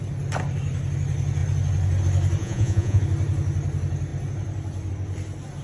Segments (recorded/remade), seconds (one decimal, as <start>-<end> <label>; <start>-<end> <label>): 0.0-2.4 recorded; 2.4-3.0 remade; 3.0-5.6 recorded